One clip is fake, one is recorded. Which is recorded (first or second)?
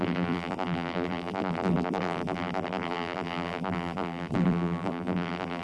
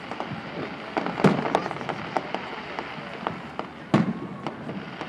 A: second